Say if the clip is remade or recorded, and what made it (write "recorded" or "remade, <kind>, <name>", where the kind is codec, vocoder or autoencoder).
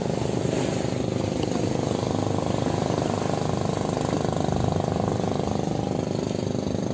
recorded